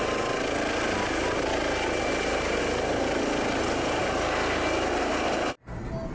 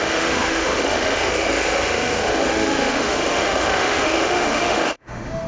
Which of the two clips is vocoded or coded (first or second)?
second